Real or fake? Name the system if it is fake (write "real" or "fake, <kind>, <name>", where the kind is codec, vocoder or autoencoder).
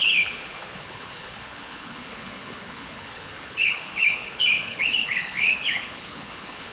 fake, codec, HILCodec